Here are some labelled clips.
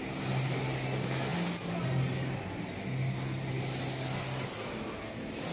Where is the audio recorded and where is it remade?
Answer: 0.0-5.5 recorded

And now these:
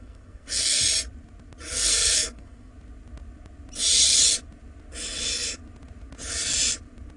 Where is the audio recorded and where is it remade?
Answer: 0.0-0.8 remade; 0.8-1.7 recorded; 1.7-2.7 remade; 2.7-7.2 recorded